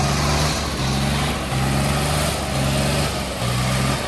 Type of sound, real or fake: real